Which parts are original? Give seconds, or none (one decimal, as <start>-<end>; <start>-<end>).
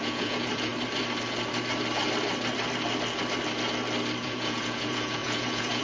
0.7-4.2